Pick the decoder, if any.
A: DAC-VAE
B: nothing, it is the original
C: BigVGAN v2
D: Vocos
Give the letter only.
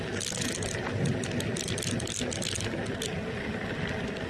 B